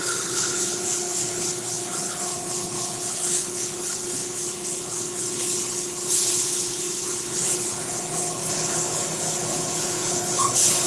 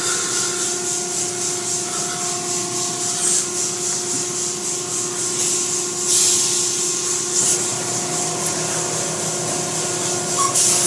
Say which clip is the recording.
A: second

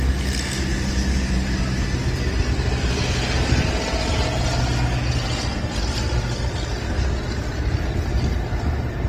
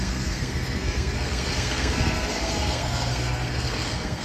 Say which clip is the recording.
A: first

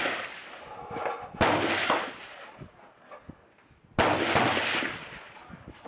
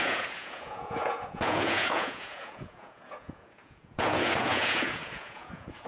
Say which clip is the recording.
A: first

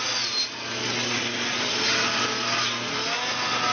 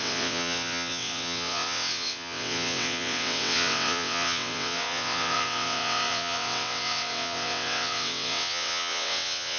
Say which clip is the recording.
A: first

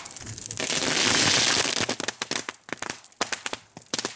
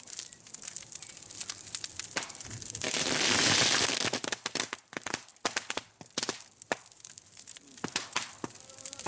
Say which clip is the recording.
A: first